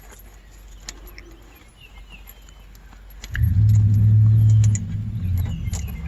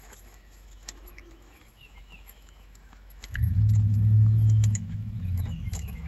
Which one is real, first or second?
first